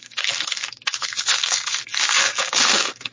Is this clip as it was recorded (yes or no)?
no